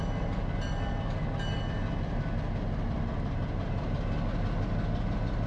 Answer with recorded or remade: recorded